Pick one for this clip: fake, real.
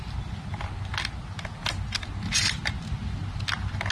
real